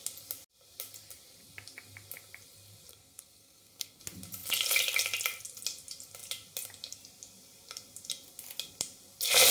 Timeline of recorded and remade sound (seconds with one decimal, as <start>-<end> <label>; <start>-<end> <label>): 0.0-2.9 recorded; 2.9-4.0 remade; 4.0-9.5 recorded